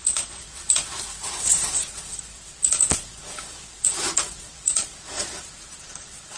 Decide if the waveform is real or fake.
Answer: fake